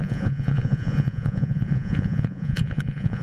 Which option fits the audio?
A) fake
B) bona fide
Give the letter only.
A